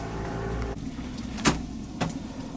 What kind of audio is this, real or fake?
real